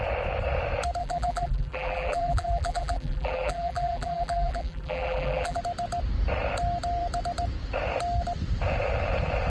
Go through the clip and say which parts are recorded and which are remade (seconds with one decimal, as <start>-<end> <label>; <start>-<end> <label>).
0.0-1.0 recorded; 1.0-5.6 remade; 5.6-9.5 recorded